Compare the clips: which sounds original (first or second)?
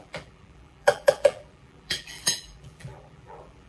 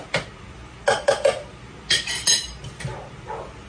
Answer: second